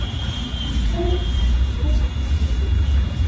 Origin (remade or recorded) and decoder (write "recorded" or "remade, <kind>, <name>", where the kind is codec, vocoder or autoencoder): remade, vocoder, Vocos